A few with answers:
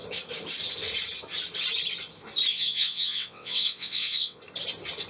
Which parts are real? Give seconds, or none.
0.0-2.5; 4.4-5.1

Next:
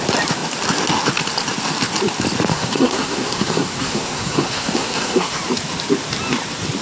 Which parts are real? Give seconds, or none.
0.0-2.5; 5.4-6.8

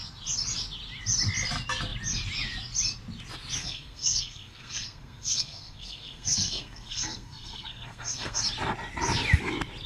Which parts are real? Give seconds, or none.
0.0-3.6; 8.4-9.9

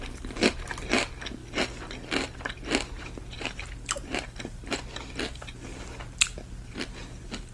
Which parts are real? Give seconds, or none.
0.0-7.5

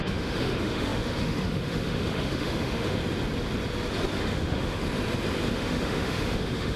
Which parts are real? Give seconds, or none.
3.0-4.2; 4.8-5.5

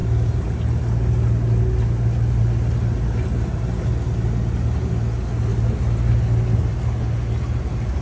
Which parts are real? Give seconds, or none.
0.0-8.0

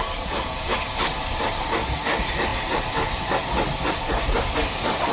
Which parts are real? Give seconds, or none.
0.0-5.1